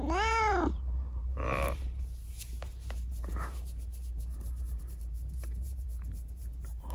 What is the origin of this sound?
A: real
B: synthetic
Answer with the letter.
B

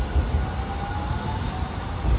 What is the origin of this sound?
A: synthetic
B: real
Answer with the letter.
B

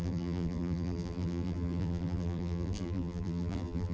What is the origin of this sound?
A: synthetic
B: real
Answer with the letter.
A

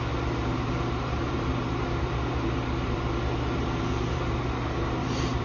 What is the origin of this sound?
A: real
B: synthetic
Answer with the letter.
B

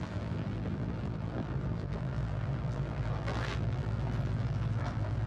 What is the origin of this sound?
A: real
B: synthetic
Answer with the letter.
B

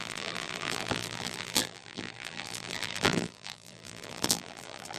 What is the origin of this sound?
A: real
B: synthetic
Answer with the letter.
B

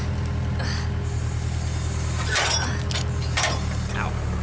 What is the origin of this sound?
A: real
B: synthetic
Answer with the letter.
A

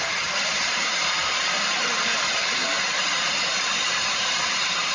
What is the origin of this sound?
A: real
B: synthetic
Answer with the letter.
B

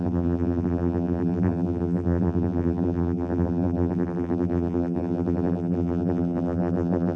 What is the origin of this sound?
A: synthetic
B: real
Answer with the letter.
A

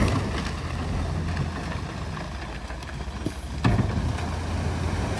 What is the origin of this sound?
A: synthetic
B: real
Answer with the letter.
B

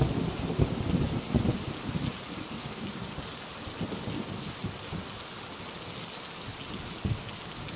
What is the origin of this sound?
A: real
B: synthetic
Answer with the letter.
A